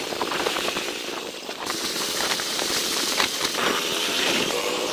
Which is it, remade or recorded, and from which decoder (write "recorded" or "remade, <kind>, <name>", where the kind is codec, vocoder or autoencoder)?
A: remade, vocoder, BigVGAN v2